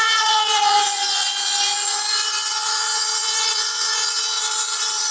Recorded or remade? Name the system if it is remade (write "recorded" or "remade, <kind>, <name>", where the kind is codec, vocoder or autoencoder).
remade, vocoder, Vocos